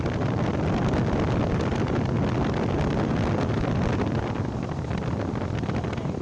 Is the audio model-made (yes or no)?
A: no